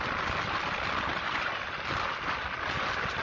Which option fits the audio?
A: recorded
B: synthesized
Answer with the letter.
A